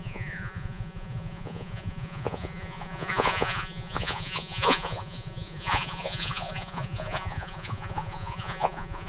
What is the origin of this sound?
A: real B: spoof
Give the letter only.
B